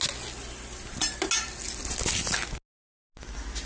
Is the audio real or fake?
real